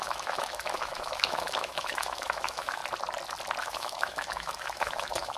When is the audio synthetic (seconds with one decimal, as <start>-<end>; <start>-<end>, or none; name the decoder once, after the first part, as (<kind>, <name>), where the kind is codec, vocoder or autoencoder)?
0.0-2.8 (autoencoder, DAC-VAE); 3.6-5.4